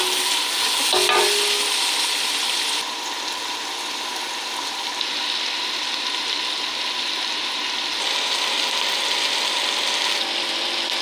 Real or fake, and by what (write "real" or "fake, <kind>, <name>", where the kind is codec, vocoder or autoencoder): real